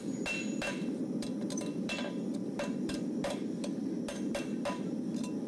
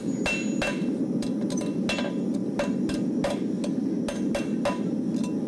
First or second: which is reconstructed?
first